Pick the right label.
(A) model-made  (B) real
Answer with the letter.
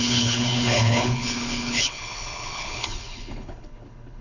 A